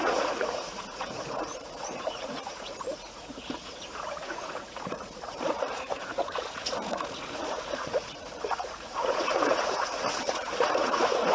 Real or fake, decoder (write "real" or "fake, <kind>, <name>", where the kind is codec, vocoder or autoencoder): fake, vocoder, Vocos